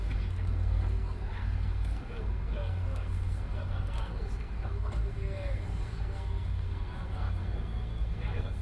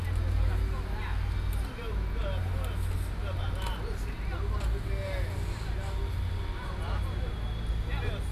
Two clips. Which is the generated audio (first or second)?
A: first